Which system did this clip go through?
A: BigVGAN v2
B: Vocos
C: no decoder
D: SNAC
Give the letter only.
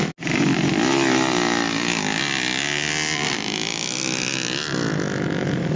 C